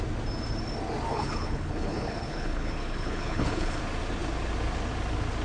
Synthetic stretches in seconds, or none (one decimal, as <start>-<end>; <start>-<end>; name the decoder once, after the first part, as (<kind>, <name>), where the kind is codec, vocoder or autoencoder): 1.1-3.8 (codec, HILCodec)